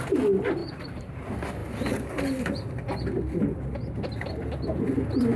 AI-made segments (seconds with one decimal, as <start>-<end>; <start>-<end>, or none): 0.6-1.1